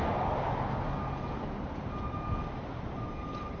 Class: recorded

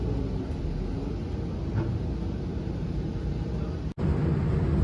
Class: recorded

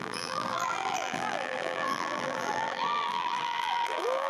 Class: remade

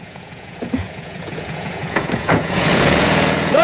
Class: remade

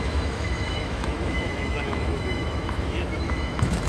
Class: remade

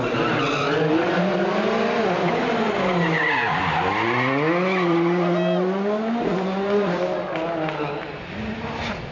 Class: recorded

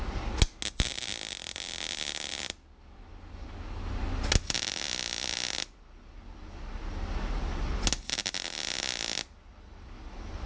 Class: recorded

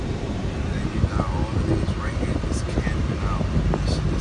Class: recorded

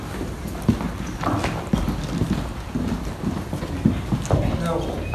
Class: recorded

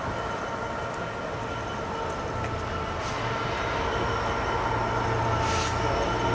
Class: recorded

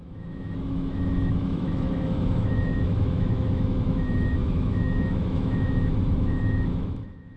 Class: remade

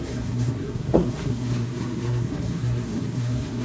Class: remade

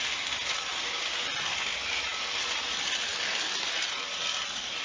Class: recorded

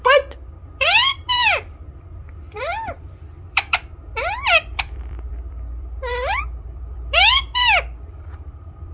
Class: remade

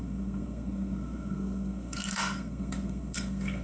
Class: remade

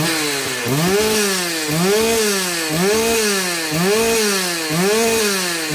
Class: recorded